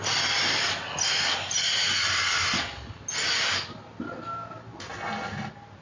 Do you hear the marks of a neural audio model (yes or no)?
no